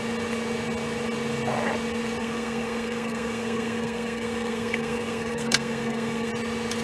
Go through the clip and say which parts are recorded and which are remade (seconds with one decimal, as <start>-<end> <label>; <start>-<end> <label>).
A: 0.0-2.2 recorded; 2.2-6.3 remade; 6.3-6.8 recorded

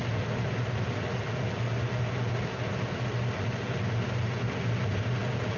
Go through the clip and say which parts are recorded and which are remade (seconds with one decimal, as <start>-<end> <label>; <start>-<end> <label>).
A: 0.0-5.6 recorded

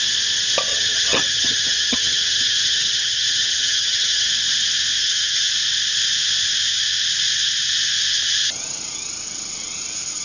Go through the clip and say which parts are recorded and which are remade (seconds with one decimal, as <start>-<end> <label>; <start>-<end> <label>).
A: 0.0-0.7 recorded; 0.7-4.3 remade; 4.3-5.0 recorded; 5.0-5.5 remade; 5.5-10.2 recorded

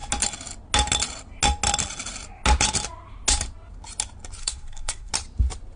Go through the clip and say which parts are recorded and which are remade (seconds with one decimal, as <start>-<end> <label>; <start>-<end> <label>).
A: 0.0-4.4 recorded; 4.4-5.1 remade; 5.1-5.8 recorded

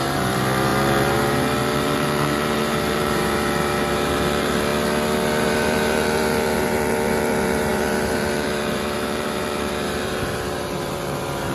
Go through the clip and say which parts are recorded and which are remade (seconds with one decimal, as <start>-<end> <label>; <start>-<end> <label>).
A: 0.0-4.7 remade; 4.7-5.4 recorded; 5.4-11.5 remade

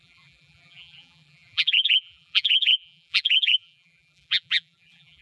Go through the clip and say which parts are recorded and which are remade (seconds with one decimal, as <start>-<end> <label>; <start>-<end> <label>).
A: 0.0-5.2 remade

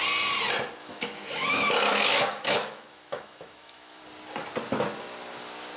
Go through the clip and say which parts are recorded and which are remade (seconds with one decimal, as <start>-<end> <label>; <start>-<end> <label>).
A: 0.0-0.8 recorded; 0.8-4.0 remade; 4.0-5.8 recorded